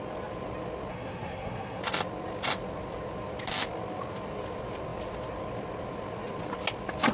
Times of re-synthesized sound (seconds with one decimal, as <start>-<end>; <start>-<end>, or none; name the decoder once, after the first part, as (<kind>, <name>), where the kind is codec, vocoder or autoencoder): 0.9-1.8 (codec, SNAC)

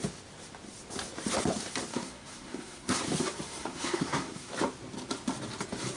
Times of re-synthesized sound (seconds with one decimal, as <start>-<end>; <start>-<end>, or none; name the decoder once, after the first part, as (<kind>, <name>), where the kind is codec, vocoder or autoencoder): 1.9-3.0 (codec, SNAC); 3.6-4.5

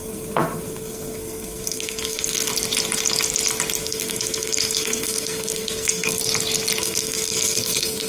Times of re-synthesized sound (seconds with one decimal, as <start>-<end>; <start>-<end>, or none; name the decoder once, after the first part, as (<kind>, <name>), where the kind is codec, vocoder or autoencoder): 0.0-2.5 (codec, SNAC); 3.8-6.2; 6.8-8.1